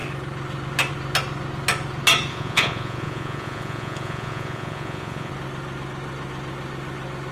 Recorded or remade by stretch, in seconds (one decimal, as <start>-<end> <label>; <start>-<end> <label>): 0.0-2.3 recorded; 2.3-5.3 remade; 5.3-7.3 recorded